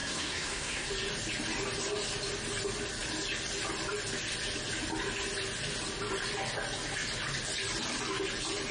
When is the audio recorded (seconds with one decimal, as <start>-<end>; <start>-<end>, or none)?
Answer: 0.9-8.7